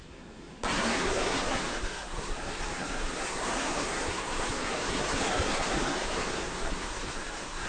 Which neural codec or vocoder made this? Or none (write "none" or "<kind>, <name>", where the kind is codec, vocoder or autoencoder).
codec, SNAC